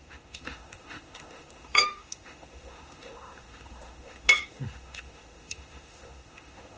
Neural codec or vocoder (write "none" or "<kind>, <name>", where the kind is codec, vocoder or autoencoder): autoencoder, DAC-VAE